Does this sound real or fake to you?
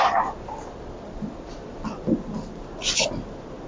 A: real